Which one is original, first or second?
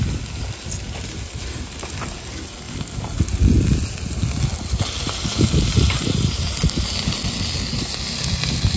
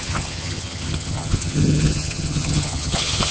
first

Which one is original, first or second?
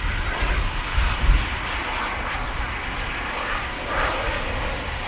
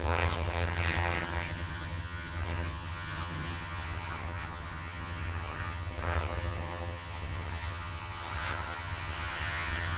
first